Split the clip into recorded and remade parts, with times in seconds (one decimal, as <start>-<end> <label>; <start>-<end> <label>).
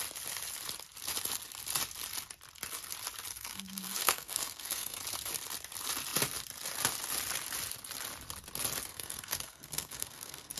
0.0-3.3 recorded; 3.3-5.0 remade; 5.0-8.9 recorded; 8.9-10.6 remade